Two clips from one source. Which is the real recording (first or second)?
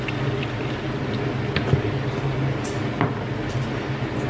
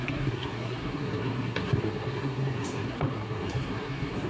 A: first